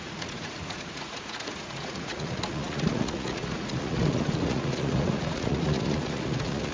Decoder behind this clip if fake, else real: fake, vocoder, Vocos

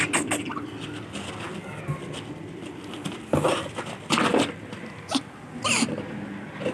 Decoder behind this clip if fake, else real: real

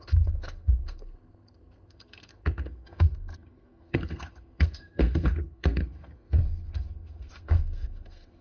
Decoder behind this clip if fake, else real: fake, codec, SNAC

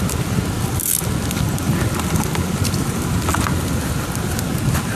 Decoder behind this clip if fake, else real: real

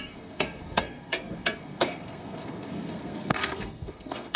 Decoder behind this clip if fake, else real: fake, codec, SNAC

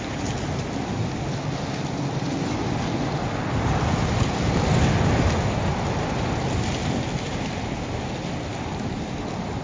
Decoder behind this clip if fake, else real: real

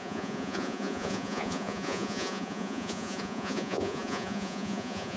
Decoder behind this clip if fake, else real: fake, vocoder, Vocos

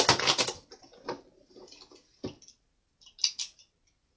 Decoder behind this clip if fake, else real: real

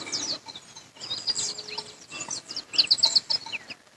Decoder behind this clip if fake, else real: real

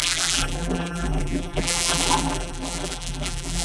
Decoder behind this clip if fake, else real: fake, vocoder, BigVGAN v2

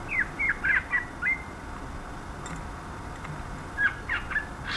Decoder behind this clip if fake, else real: real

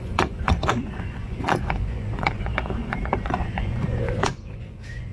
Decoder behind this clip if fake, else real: fake, vocoder, Vocos